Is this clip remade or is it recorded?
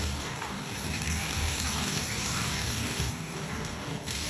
remade